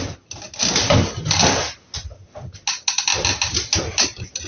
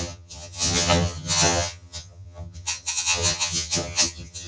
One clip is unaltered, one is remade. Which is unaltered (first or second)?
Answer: first